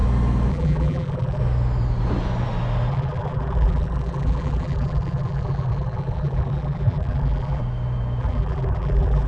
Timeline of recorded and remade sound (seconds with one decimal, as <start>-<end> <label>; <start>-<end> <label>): 0.0-0.5 recorded; 0.5-1.4 remade; 1.4-2.9 recorded; 2.9-7.6 remade; 7.6-8.2 recorded; 8.2-9.3 remade